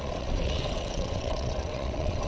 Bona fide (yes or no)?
no